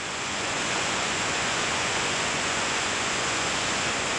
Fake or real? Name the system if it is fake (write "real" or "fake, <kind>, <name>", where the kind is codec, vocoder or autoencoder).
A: fake, vocoder, Vocos